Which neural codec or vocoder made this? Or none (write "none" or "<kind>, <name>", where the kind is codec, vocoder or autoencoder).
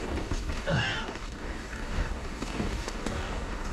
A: codec, DAC